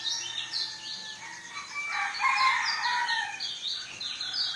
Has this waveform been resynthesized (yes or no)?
no